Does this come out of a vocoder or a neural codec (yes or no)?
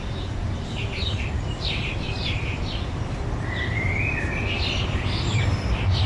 yes